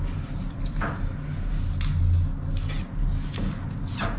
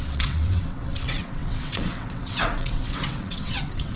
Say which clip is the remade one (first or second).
second